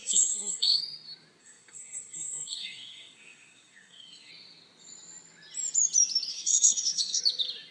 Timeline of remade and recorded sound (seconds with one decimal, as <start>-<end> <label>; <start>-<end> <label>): 0.0-0.8 remade; 0.8-1.4 recorded; 1.4-4.3 remade; 4.3-6.3 recorded; 6.3-7.2 remade; 7.2-7.7 recorded